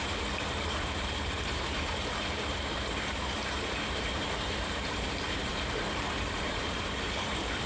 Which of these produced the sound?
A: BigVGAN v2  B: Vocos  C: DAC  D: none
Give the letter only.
A